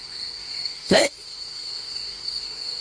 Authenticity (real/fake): fake